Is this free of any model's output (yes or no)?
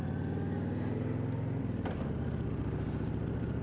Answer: yes